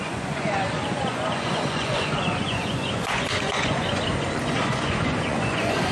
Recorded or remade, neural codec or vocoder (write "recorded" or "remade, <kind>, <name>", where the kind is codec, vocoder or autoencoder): remade, vocoder, Vocos